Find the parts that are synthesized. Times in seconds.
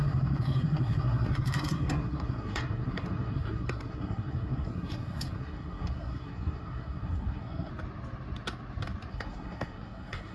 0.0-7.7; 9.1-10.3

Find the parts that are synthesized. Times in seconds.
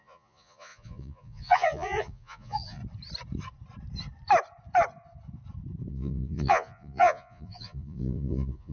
0.0-2.8; 5.9-8.7